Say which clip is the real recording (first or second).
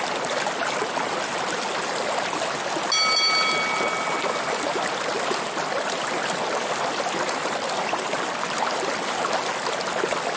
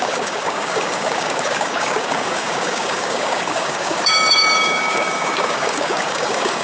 first